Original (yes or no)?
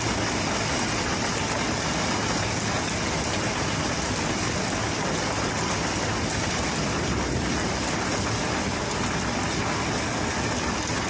yes